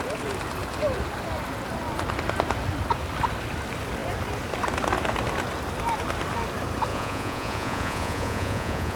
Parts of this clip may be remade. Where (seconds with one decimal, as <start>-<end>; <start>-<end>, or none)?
6.9-9.0